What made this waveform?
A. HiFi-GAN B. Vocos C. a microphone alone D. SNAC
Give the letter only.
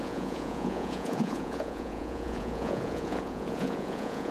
B